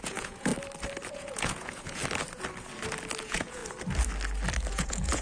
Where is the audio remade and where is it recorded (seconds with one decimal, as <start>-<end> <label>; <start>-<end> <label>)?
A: 0.0-0.5 remade; 0.5-1.1 recorded; 1.1-2.0 remade; 2.0-3.2 recorded; 3.2-3.6 remade; 3.6-4.7 recorded; 4.7-5.2 remade